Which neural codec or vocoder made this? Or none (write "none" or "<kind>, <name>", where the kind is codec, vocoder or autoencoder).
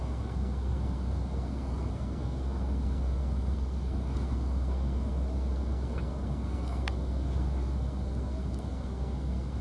codec, SNAC